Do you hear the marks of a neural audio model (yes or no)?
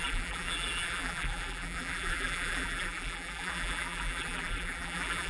yes